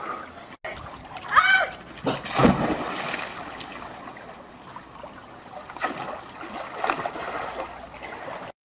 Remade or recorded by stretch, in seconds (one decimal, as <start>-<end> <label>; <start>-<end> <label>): 0.0-8.6 recorded